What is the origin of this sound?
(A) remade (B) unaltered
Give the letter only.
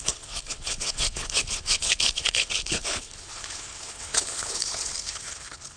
A